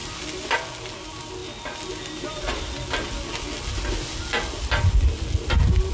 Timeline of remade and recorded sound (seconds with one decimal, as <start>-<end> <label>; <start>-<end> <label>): 0.0-5.9 recorded